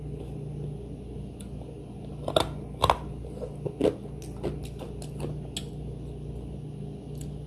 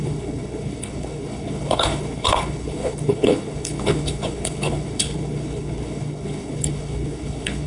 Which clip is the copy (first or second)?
second